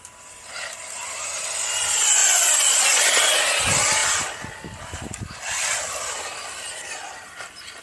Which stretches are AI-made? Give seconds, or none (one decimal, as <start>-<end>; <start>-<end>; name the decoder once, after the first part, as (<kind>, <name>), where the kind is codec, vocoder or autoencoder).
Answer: none